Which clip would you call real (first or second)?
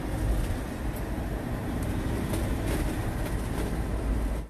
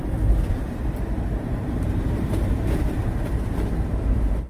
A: first